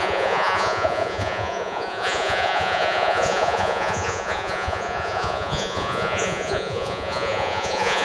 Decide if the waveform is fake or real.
fake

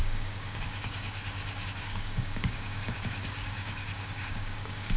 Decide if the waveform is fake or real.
fake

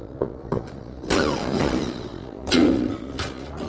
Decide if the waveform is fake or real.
fake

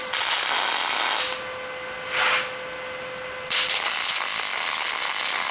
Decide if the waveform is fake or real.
real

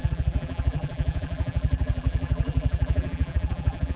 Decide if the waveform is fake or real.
fake